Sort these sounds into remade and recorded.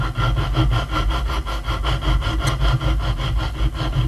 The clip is recorded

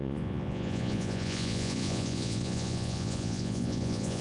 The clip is remade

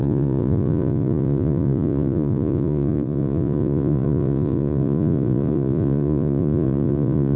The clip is remade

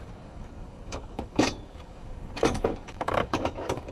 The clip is remade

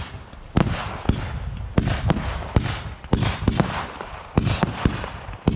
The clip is recorded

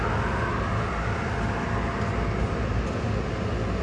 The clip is recorded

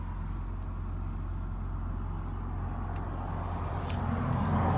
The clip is recorded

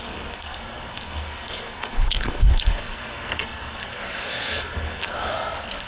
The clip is remade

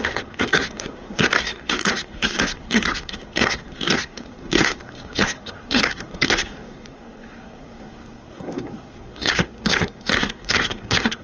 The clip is remade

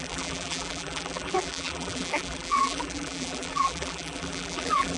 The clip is remade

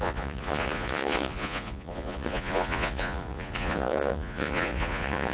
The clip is remade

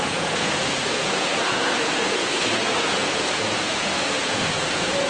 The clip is remade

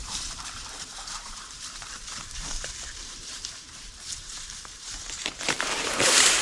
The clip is remade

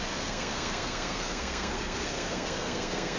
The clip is remade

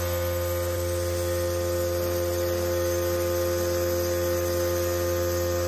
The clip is recorded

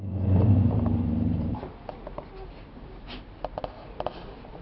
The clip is recorded